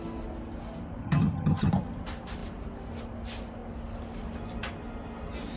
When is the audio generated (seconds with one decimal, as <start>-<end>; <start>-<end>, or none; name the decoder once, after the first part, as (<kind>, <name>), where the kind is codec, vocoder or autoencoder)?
1.0-1.7 (vocoder, HiFi-GAN)